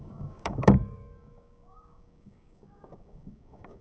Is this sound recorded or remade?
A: remade